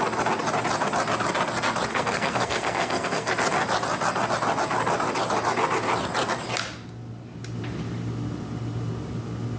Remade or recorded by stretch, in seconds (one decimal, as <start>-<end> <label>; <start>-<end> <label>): 0.0-1.9 recorded; 1.9-3.3 remade; 3.3-9.6 recorded